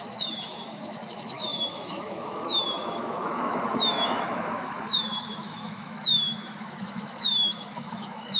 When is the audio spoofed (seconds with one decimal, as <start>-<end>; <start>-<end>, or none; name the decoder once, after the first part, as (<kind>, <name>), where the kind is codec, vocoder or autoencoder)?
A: 0.0-8.4 (autoencoder, DAC-VAE)